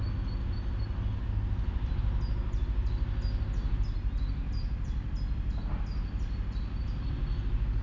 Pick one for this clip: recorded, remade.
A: recorded